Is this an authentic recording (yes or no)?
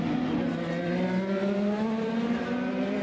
yes